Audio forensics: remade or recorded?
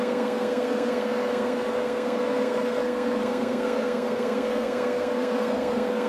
remade